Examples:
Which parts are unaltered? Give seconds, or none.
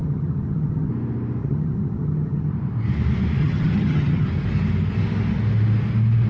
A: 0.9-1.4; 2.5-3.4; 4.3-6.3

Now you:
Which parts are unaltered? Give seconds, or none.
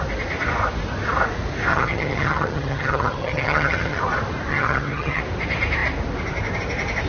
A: 0.0-1.7; 4.0-4.5; 5.2-7.1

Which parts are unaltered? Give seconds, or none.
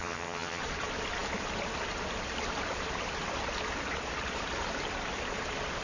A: 0.6-5.8